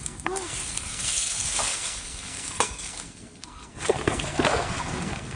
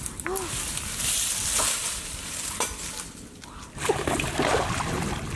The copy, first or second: first